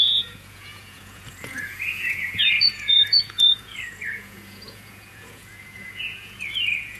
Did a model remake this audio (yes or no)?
yes